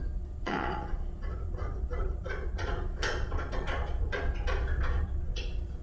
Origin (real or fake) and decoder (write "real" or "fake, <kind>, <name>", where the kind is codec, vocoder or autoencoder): fake, vocoder, Vocos